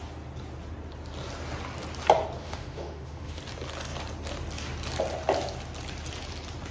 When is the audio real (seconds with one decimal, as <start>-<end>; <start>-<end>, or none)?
0.0-2.4; 3.4-6.7

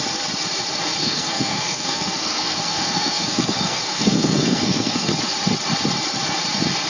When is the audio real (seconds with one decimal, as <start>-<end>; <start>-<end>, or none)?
0.0-1.0; 5.1-6.9

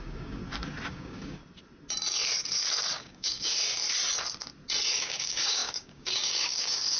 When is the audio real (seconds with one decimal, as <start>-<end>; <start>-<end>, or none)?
0.4-0.9; 1.4-2.9; 3.8-4.9

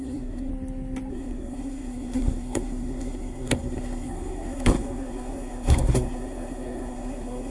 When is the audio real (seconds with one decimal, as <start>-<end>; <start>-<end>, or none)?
0.5-1.1